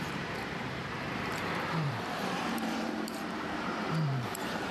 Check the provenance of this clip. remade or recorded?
remade